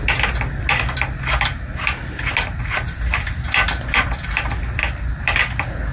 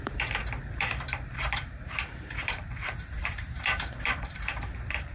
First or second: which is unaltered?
first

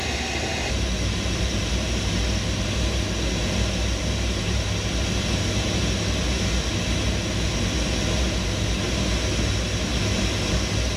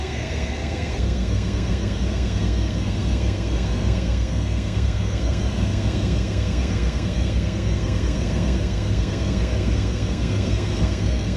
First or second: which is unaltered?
first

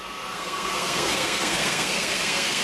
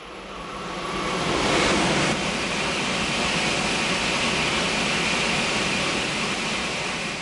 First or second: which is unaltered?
second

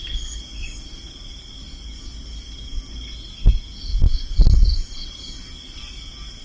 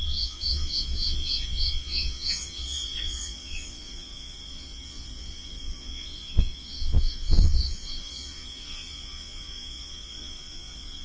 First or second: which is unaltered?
first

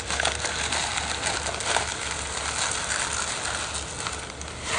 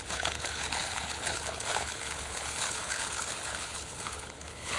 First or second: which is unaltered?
first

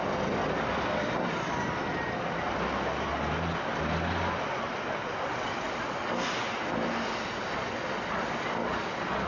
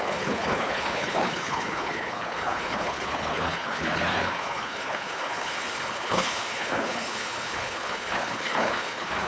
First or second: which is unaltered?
first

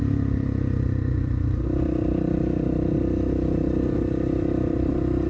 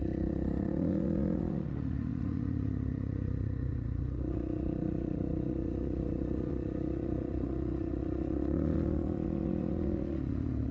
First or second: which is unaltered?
first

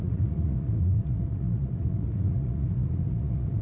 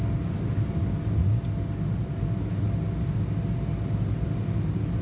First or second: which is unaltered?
second